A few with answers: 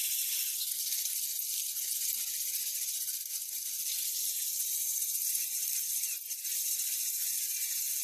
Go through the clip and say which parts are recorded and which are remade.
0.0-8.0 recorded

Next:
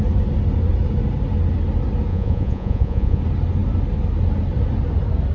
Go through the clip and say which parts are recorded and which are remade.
0.0-2.1 recorded; 2.1-3.2 remade; 3.2-5.3 recorded

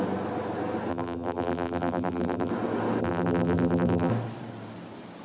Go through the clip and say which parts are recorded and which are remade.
0.0-0.9 recorded; 0.9-2.5 remade; 2.5-3.0 recorded; 3.0-4.1 remade; 4.1-5.2 recorded